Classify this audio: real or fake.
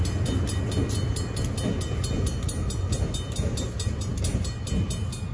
real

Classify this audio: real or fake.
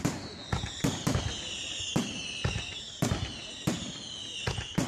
real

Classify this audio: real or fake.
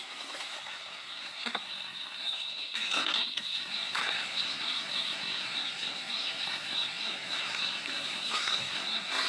fake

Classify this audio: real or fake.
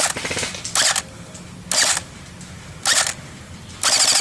real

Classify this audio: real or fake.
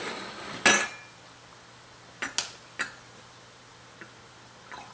real